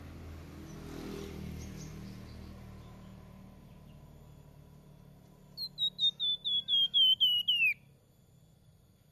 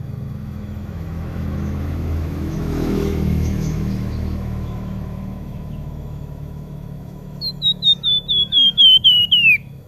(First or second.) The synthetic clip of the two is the second